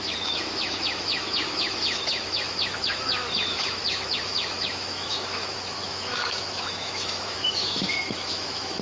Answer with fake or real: fake